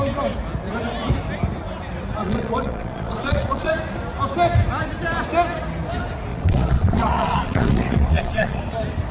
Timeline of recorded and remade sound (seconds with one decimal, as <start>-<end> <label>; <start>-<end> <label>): 0.0-2.2 recorded; 2.2-3.7 remade; 3.7-6.3 recorded; 6.3-8.6 remade; 8.6-9.1 recorded